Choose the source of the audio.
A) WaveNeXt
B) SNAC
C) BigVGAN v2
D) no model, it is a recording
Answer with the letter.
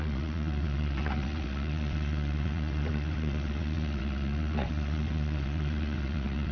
A